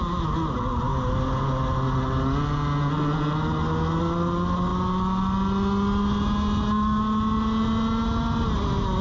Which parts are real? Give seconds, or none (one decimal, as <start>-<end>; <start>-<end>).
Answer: 0.0-9.0